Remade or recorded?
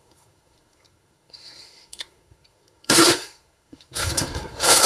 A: remade